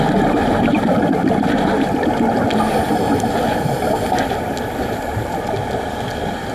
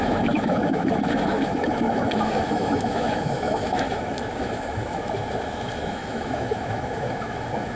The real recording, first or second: first